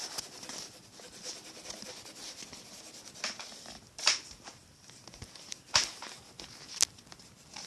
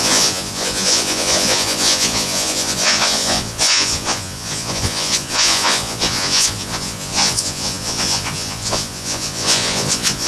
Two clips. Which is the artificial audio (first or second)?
second